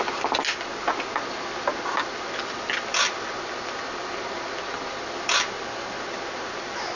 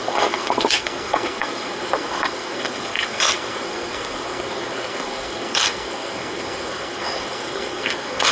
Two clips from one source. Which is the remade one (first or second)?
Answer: second